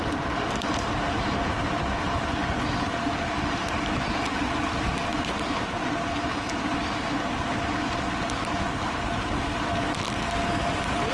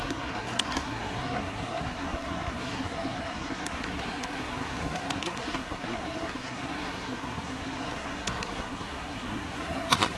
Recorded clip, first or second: first